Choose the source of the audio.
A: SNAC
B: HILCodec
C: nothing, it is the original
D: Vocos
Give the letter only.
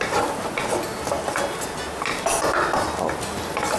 C